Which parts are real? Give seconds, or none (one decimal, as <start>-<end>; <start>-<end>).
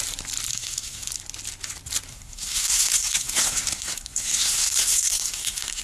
0.0-0.5; 1.1-2.1